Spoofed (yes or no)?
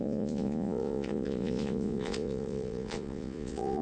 yes